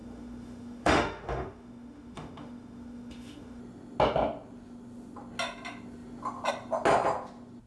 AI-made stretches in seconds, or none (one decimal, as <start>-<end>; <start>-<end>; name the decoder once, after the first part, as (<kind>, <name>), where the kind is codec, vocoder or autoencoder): 0.0-3.6 (autoencoder, DAC-VAE)